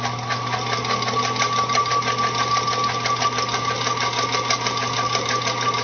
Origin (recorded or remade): recorded